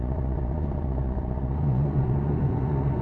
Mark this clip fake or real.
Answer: fake